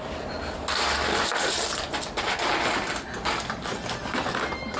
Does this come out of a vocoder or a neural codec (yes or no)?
no